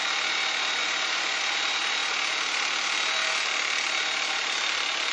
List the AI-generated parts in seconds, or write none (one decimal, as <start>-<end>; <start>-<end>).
0.8-1.4